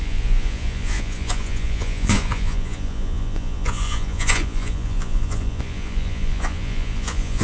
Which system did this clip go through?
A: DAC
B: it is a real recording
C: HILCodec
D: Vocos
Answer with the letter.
D